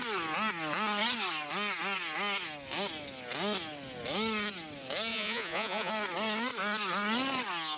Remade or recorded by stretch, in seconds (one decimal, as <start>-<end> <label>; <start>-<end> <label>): 0.0-5.1 recorded; 5.1-5.9 remade; 5.9-7.8 recorded